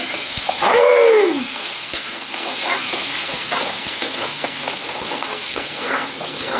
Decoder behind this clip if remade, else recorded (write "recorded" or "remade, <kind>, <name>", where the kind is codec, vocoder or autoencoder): remade, codec, SNAC